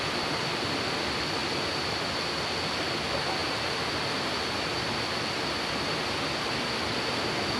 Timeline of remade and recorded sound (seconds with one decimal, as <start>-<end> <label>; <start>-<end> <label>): 0.0-7.6 recorded